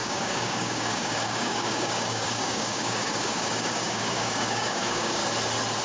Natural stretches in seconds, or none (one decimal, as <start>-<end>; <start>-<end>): 5.2-5.8